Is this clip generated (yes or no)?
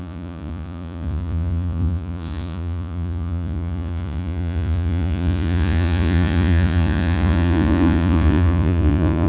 yes